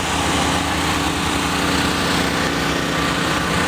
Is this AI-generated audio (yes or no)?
no